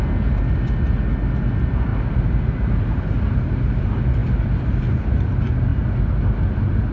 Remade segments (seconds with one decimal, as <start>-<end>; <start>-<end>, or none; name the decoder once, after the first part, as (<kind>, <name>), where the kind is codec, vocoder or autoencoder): 1.9-2.7 (vocoder, BigVGAN v2)